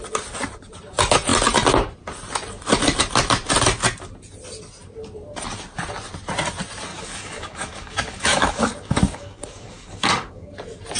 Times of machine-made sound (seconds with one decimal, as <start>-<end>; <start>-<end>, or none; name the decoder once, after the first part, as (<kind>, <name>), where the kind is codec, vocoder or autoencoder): 6.9-10.5 (codec, DAC)